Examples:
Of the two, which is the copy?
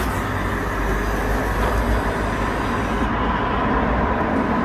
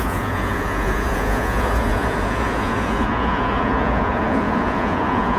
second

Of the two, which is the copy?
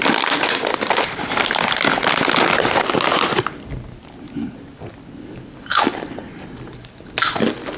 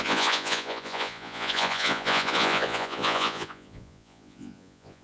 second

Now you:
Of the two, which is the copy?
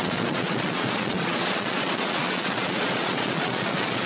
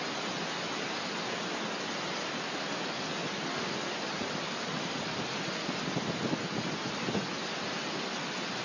first